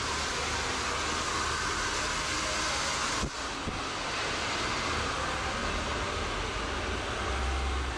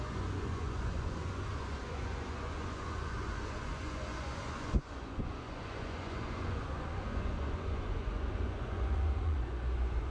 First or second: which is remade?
second